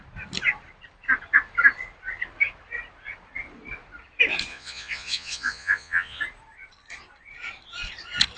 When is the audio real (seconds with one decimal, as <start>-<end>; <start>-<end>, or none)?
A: 0.0-4.5; 6.2-8.4